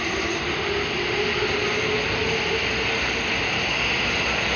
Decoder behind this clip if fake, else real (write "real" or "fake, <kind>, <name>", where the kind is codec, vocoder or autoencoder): real